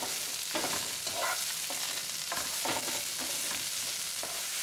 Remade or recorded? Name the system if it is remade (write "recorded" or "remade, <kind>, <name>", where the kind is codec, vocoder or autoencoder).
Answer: recorded